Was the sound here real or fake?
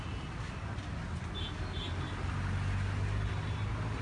real